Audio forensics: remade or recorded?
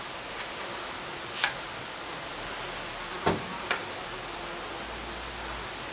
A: recorded